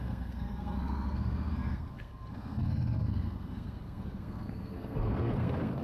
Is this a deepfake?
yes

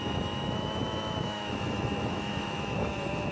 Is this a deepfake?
yes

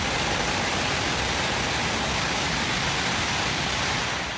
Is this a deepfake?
no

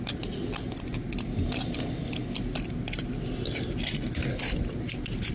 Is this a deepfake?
no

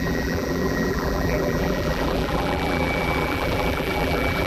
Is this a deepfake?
yes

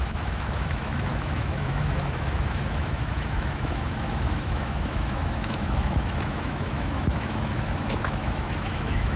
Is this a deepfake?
yes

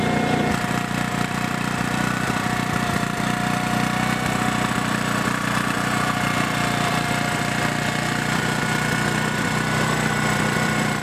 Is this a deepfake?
yes